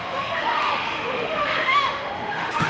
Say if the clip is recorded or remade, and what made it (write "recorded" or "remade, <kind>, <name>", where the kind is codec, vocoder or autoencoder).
remade, autoencoder, DAC-VAE